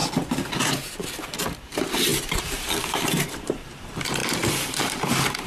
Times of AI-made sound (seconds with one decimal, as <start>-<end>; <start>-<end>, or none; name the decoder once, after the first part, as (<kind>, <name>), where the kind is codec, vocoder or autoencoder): 0.0-5.5 (vocoder, BigVGAN v2)

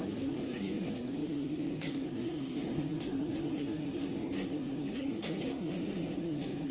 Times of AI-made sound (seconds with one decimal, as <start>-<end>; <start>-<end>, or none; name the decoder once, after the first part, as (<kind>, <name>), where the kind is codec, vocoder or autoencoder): 0.0-6.7 (codec, SNAC)

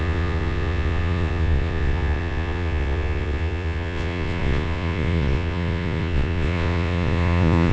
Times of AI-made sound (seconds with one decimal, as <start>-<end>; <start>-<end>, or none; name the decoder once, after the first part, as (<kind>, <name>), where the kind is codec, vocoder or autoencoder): 0.0-7.7 (vocoder, Vocos)

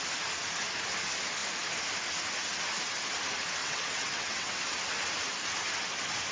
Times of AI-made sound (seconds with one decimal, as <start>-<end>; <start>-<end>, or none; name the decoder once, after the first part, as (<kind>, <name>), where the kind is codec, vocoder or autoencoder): 3.6-4.5 (vocoder, WaveNeXt)

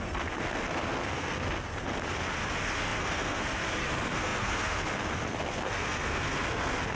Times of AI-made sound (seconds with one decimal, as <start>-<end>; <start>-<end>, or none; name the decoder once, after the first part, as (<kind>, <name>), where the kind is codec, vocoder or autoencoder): 0.0-1.9 (codec, SNAC); 2.5-7.0

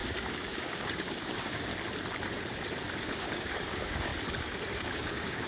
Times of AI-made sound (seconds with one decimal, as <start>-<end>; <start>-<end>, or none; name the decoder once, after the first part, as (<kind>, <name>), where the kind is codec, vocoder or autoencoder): 0.0-1.7 (codec, DAC); 3.0-4.1; 4.7-5.5

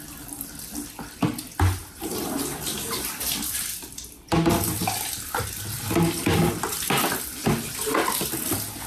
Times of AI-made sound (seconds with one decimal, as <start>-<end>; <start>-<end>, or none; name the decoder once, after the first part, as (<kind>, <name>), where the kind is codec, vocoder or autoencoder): 1.8-2.4 (vocoder, BigVGAN v2)